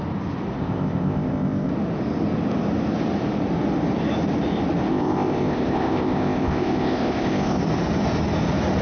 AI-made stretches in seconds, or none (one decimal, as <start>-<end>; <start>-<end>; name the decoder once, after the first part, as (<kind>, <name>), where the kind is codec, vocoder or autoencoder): 0.6-1.7 (codec, ZipCodec); 4.9-7.6